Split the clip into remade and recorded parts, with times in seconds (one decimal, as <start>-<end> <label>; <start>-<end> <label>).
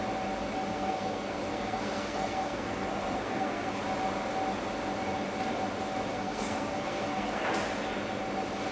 0.0-0.7 recorded; 0.7-3.8 remade; 3.8-6.1 recorded; 6.1-7.4 remade; 7.4-8.7 recorded